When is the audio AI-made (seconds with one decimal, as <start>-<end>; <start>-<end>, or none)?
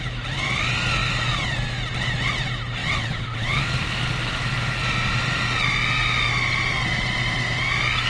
2.8-3.6